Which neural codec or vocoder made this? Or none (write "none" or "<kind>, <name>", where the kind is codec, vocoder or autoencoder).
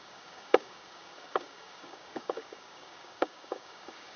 codec, DAC